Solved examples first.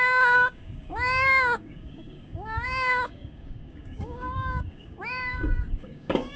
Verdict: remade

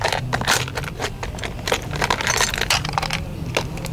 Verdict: recorded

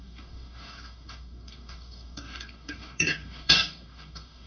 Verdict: remade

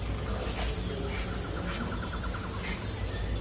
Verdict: recorded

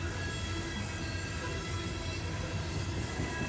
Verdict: recorded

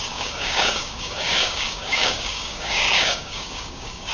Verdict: remade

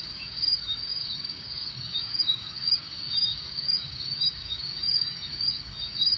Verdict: remade